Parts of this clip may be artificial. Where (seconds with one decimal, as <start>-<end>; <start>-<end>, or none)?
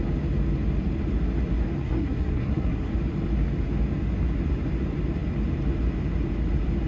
1.8-2.9